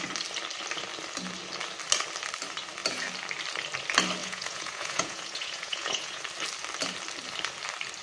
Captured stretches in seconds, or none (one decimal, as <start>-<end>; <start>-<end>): 0.0-4.2; 6.2-8.0